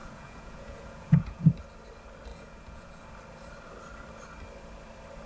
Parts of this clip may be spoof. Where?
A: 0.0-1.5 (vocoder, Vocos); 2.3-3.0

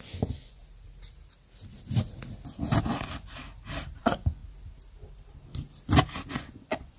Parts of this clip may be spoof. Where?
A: 0.0-0.6 (vocoder, Vocos); 4.0-4.4; 6.3-7.0

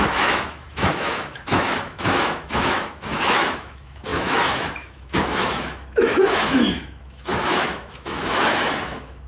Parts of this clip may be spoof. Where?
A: 0.0-9.3 (autoencoder, DAC-VAE)

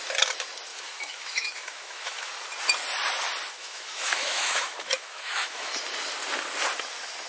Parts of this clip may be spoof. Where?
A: 0.7-2.3 (autoencoder, DAC-VAE); 3.6-5.7

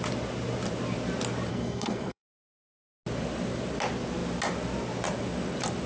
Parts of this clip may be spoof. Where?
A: 1.5-2.7 (codec, SNAC)

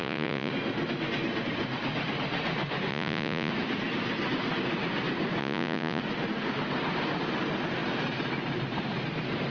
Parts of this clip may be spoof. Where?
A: 0.0-0.5 (vocoder, Vocos); 2.9-3.5; 5.4-6.0

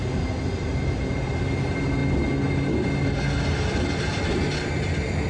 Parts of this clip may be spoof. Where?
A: none